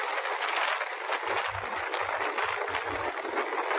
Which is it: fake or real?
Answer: real